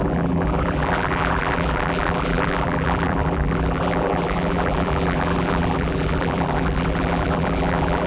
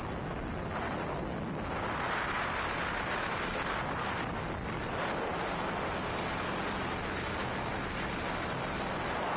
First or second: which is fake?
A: first